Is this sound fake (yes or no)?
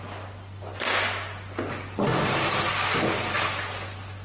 no